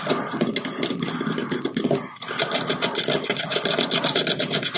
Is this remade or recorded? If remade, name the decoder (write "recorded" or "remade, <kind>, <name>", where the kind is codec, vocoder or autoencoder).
recorded